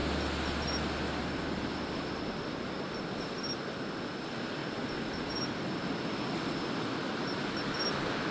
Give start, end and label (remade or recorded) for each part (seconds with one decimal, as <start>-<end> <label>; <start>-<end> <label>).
0.0-8.3 recorded